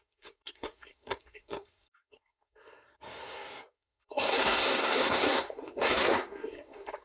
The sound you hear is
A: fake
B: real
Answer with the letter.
A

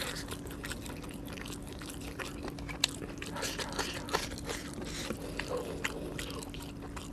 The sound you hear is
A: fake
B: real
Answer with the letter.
B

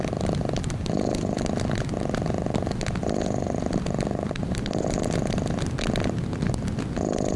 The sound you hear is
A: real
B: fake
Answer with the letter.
A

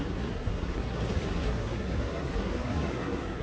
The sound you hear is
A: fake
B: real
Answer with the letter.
A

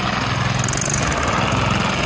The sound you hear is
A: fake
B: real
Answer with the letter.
B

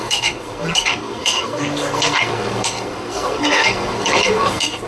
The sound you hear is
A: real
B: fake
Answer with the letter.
B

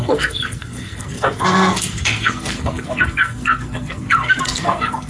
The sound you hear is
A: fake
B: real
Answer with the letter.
A